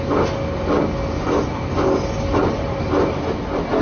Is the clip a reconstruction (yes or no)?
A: no